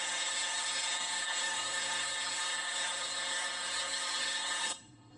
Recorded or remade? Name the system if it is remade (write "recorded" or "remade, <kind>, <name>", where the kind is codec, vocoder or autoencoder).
remade, codec, SNAC